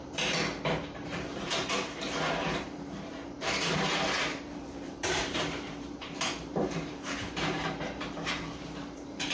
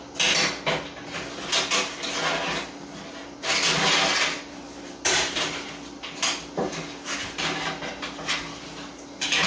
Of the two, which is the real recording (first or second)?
second